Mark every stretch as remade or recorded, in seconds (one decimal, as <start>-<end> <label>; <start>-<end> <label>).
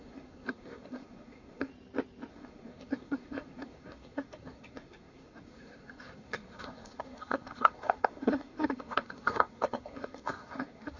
0.0-1.7 remade; 1.7-2.3 recorded; 2.3-11.0 remade